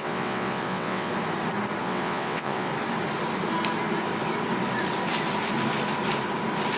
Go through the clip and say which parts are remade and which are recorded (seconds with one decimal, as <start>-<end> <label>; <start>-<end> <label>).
0.0-1.1 remade; 1.1-1.8 recorded; 1.8-2.7 remade; 2.7-6.8 recorded